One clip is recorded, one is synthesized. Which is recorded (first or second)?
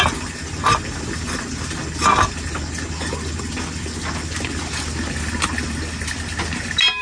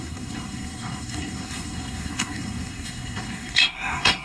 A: first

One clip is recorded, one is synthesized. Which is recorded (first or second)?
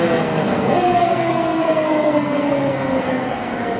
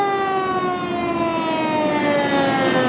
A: second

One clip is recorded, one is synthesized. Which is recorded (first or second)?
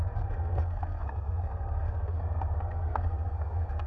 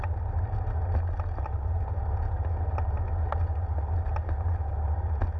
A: second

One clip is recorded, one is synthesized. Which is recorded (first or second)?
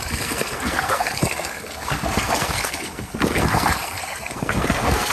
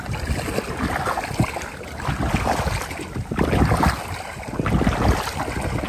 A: second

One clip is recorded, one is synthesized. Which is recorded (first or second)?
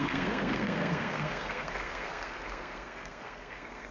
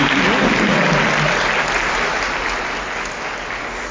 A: second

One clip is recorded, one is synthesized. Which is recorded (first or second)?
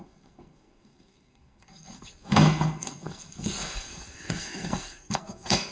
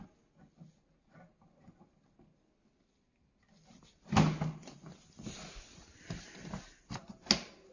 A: second